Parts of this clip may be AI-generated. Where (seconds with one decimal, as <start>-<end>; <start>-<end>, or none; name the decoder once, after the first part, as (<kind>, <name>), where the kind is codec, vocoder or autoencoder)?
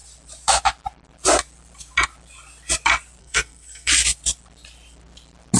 3.2-3.9 (codec, SNAC)